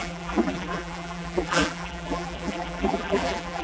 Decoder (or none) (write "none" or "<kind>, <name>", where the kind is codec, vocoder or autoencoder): vocoder, BigVGAN v2